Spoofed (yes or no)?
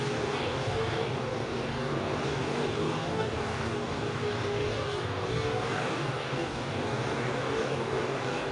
yes